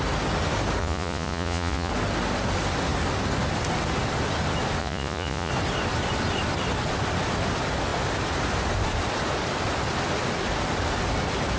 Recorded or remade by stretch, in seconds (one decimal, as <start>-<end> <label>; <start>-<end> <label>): 0.0-0.8 recorded; 0.8-1.9 remade; 1.9-4.8 recorded; 4.8-5.5 remade; 5.5-11.6 recorded